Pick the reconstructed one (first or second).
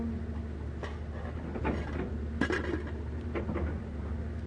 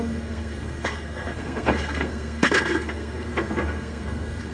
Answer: second